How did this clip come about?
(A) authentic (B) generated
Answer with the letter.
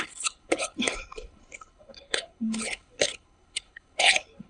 B